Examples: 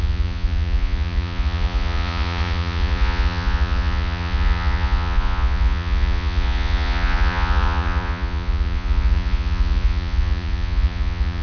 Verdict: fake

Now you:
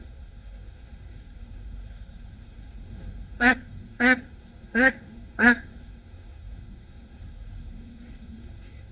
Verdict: fake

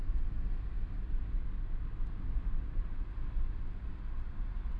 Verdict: real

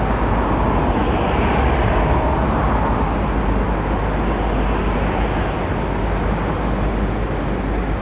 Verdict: real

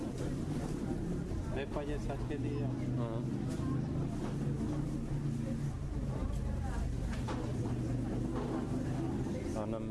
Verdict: real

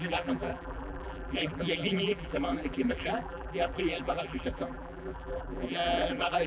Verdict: fake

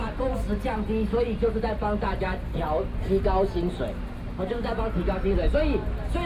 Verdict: real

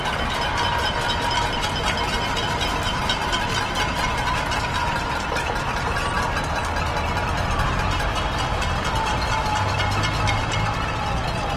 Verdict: real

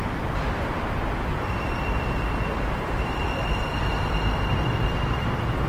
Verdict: fake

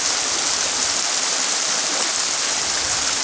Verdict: real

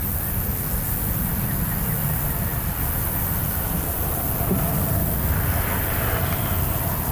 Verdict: real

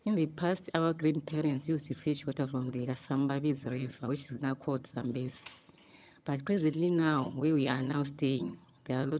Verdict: fake